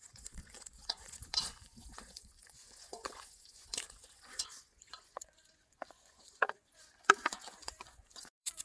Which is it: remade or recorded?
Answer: remade